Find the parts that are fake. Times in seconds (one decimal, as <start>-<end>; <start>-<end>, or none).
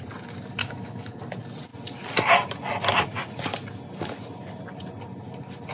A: 0.6-1.2